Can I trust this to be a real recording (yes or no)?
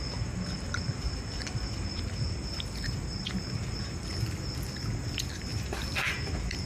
yes